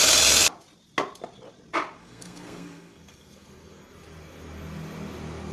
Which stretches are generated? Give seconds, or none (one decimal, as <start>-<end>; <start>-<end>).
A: 2.0-3.8